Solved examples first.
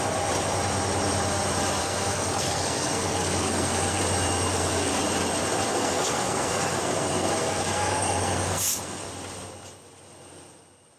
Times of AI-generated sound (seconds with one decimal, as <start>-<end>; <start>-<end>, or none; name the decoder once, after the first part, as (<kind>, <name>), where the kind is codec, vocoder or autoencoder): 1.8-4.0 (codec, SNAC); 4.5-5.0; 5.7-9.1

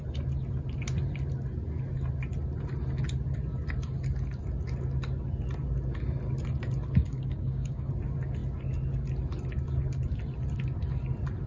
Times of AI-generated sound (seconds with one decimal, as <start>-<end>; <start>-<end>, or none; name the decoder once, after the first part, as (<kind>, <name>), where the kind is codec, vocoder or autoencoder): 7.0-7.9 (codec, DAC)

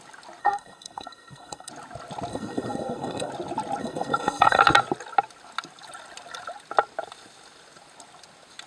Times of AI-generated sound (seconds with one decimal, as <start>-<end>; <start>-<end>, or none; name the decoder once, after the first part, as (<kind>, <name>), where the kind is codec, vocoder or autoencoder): 0.4-1.7 (codec, SNAC); 2.3-3.3; 3.8-4.6

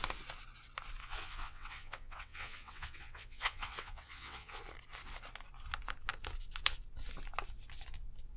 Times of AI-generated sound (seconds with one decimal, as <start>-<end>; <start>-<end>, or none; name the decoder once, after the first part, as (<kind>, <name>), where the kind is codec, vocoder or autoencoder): 1.0-4.6 (vocoder, WaveNeXt)